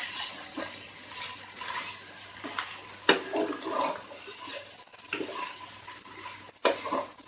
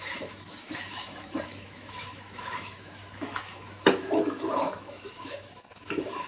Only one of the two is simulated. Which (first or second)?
second